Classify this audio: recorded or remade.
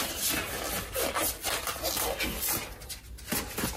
recorded